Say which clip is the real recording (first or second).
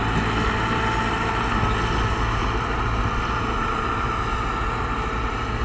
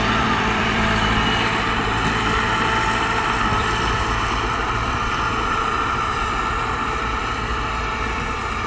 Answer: first